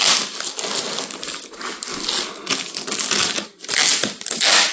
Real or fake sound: real